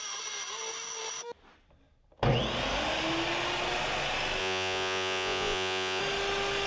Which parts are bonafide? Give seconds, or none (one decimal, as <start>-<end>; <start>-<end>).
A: 0.0-4.4; 6.0-6.7